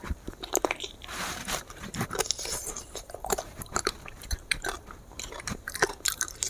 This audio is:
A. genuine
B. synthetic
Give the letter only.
B